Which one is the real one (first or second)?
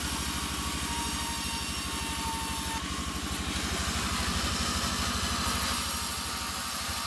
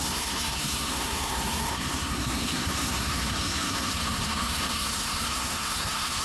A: first